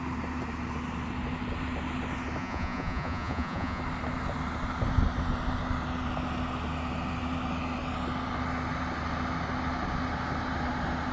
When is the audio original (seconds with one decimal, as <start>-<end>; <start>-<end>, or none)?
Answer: 0.0-2.4; 3.8-11.1

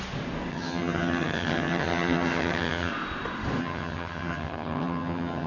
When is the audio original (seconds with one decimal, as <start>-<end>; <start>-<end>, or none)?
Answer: 0.0-0.5; 2.9-3.6